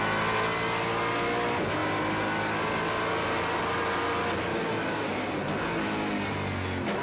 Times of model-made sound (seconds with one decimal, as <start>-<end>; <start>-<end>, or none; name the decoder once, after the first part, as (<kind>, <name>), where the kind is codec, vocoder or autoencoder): 4.5-5.3 (codec, DAC)